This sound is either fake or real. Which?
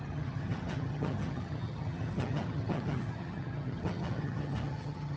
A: fake